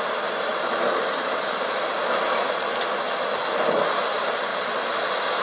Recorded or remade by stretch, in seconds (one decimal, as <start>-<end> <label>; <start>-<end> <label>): 0.0-0.5 recorded; 0.5-2.0 remade; 2.0-4.5 recorded; 4.5-5.0 remade; 5.0-5.4 recorded